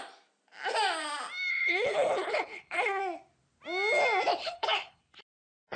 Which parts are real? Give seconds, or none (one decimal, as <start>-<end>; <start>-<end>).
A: 0.0-1.5; 3.0-4.4; 5.0-5.8